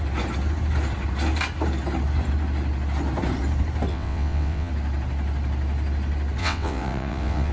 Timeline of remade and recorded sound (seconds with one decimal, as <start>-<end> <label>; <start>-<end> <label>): 0.0-3.9 recorded; 3.9-4.7 remade; 4.7-6.4 recorded; 6.4-7.5 remade